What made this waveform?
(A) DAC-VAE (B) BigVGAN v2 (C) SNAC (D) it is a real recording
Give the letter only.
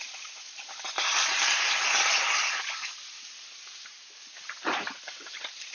B